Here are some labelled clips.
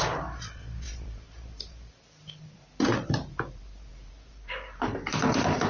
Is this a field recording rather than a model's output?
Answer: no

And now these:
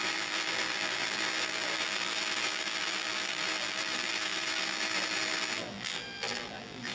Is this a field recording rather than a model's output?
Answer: no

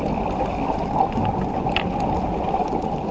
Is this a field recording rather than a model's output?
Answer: yes